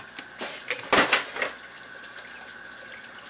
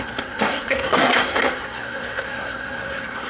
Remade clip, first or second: second